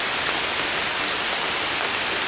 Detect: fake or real real